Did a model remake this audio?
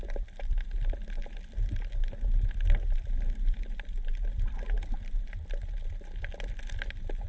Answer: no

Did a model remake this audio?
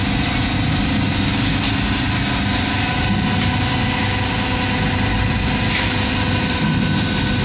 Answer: no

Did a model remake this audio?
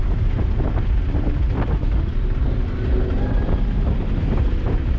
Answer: no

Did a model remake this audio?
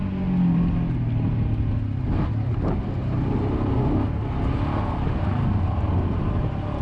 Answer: no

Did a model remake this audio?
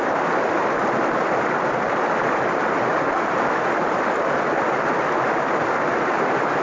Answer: no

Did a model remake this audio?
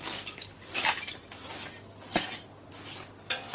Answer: no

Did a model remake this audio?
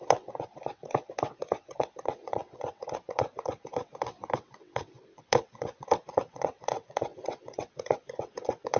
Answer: yes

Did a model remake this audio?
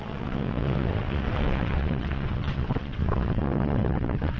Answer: yes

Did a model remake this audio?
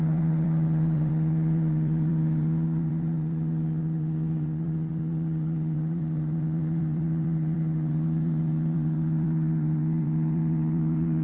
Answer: yes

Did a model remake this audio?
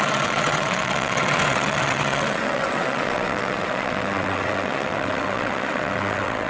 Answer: yes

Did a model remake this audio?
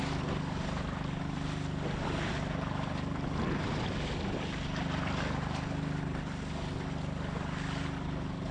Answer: no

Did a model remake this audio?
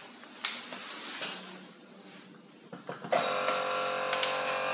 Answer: no